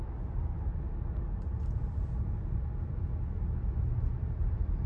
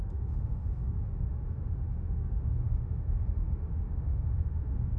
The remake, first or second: second